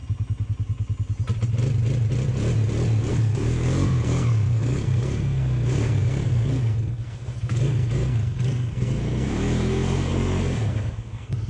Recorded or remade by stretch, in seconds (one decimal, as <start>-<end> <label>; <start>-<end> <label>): 0.0-3.1 recorded; 3.1-11.5 remade